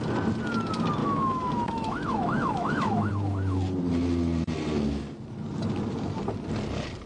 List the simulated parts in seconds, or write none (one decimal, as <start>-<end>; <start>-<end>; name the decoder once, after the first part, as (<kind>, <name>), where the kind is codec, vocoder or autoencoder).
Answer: 1.0-3.1 (autoencoder, DAC-VAE)